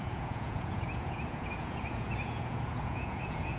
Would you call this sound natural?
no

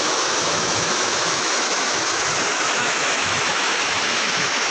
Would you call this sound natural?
no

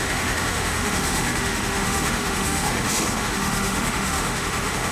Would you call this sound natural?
no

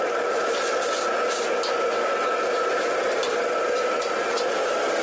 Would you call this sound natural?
yes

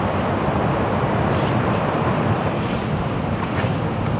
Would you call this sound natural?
no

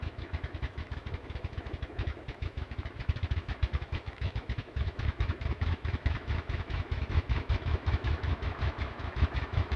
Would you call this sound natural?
no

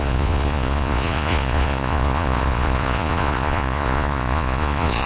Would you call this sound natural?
no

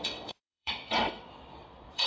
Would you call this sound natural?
no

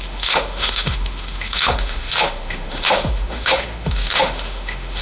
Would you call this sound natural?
no